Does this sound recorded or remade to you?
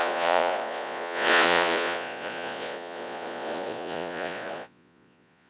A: remade